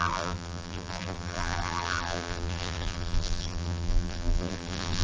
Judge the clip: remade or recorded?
remade